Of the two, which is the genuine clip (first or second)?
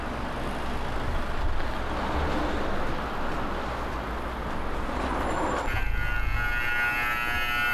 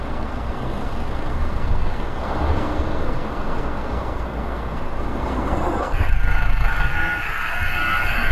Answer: first